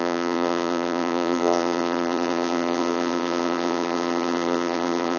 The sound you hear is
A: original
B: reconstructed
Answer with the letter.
B